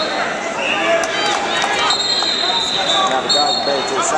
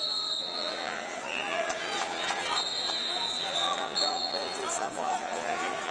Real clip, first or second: first